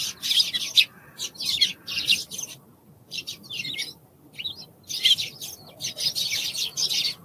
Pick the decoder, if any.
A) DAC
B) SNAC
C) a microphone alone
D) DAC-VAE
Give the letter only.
C